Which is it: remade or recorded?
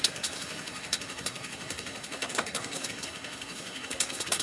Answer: remade